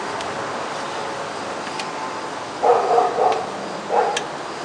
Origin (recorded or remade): recorded